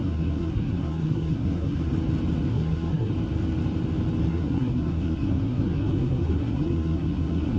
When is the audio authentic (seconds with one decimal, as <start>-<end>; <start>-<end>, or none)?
1.9-2.5; 3.1-4.3